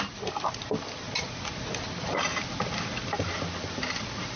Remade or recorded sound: recorded